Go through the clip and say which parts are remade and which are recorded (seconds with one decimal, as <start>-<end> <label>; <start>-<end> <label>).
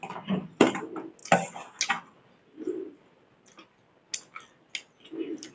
0.0-5.5 recorded